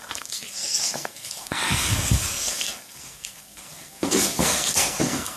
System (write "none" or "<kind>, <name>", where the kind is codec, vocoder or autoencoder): codec, SNAC